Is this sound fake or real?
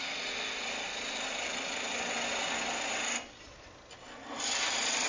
real